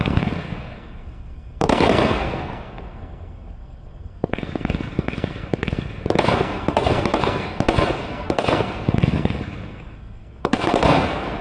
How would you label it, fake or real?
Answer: fake